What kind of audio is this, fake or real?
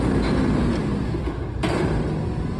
real